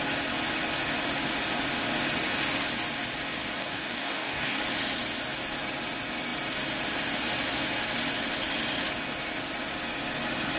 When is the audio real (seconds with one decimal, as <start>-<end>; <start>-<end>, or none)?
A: 0.0-3.6; 4.6-10.6